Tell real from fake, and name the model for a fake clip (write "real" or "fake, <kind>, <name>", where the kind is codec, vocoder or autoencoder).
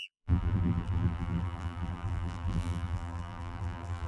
fake, vocoder, BigVGAN v2